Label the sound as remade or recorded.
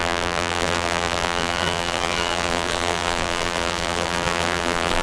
remade